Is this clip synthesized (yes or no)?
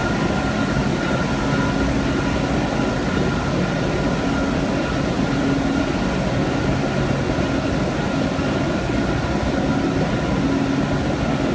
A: no